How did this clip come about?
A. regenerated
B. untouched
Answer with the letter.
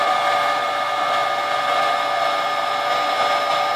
B